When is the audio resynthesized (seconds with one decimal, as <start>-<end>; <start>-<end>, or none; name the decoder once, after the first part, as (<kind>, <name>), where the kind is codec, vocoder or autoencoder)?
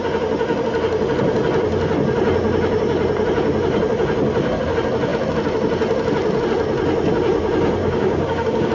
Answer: 7.8-8.7 (codec, DAC)